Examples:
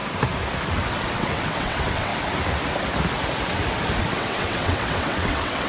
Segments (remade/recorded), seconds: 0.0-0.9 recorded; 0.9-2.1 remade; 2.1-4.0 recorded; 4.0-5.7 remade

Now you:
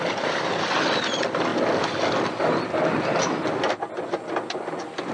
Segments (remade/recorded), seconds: 0.0-5.1 recorded

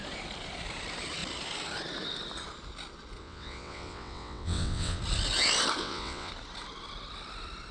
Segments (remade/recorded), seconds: 0.0-3.2 recorded; 3.2-5.0 remade; 5.0-5.8 recorded; 5.8-6.3 remade; 6.3-7.7 recorded

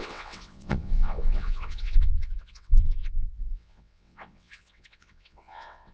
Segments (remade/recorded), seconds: 0.0-5.9 remade

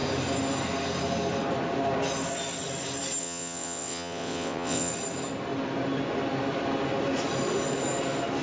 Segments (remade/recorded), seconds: 0.0-3.2 recorded; 3.2-4.9 remade; 4.9-8.4 recorded

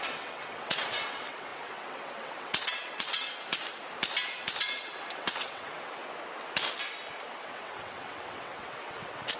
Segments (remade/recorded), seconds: 0.0-3.3 remade; 3.3-4.6 recorded; 4.6-6.0 remade; 6.0-7.4 recorded; 7.4-9.4 remade